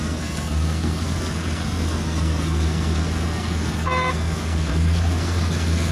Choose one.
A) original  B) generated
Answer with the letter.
B